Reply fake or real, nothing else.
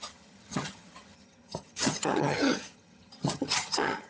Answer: fake